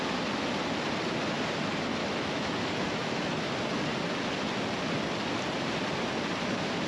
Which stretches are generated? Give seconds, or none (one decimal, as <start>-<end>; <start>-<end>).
2.0-3.5